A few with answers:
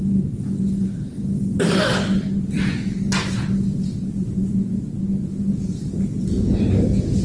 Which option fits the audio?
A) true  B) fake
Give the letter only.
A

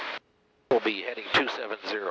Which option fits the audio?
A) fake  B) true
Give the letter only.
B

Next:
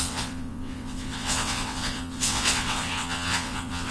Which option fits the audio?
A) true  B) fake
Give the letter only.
B